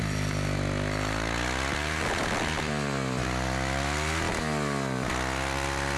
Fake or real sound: real